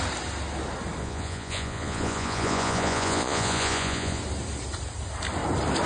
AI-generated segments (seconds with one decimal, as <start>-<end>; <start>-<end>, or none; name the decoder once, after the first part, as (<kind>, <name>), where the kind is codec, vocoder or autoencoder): 1.0-4.2 (vocoder, Vocos)